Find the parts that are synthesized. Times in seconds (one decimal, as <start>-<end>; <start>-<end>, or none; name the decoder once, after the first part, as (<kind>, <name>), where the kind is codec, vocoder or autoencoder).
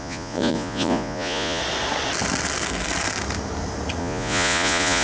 0.0-1.6 (vocoder, Vocos); 4.0-5.0